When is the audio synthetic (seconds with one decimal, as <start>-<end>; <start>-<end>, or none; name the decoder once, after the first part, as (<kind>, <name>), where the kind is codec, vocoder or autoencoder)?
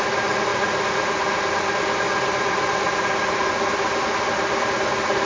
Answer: none